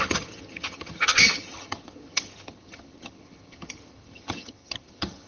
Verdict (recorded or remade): remade